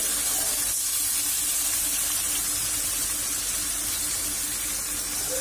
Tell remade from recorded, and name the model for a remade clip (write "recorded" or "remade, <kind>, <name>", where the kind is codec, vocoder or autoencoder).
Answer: recorded